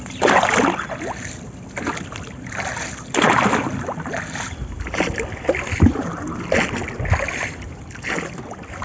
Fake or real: real